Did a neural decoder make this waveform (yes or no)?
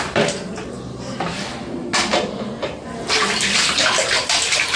no